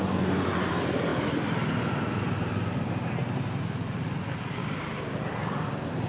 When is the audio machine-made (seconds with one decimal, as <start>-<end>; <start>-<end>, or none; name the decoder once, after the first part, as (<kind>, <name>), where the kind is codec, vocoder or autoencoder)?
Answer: 4.6-5.2 (codec, DAC)